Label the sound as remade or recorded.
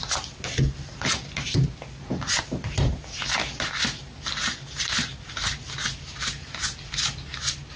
recorded